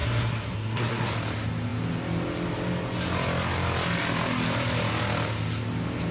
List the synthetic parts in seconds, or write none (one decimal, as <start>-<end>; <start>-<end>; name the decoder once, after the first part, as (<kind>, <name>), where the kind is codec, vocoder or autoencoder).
0.0-1.1 (codec, SNAC)